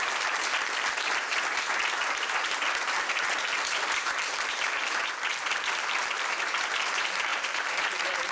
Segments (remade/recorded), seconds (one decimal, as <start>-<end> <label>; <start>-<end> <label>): 0.0-8.3 remade